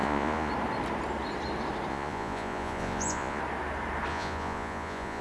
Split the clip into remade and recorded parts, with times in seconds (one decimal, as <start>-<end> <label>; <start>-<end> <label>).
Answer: 0.0-0.5 remade; 0.5-1.9 recorded; 1.9-3.4 remade; 3.4-4.1 recorded; 4.1-5.2 remade